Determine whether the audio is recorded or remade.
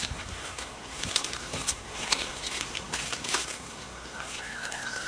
remade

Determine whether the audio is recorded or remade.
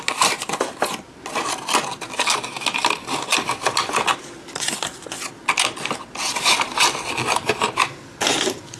recorded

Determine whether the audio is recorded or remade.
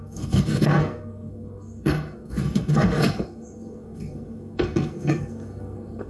remade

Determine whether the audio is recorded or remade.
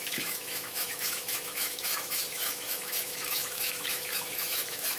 remade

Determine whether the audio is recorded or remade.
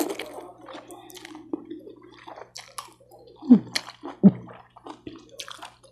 recorded